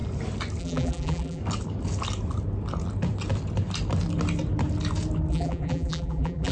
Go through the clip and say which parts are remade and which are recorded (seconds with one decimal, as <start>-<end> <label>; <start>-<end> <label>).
0.0-0.6 recorded; 0.6-1.4 remade; 1.4-5.3 recorded; 5.3-6.5 remade